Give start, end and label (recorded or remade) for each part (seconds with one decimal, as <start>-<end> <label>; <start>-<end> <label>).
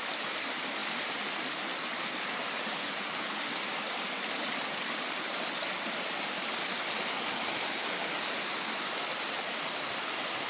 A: 0.0-10.5 recorded